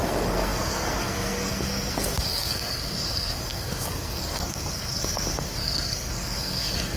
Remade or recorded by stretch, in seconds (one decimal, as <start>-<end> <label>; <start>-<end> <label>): 0.0-7.0 remade